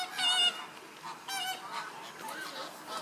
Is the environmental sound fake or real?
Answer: real